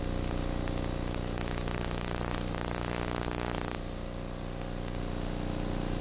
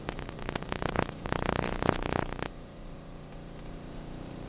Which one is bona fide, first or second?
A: first